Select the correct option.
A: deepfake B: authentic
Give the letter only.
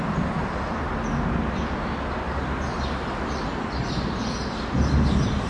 B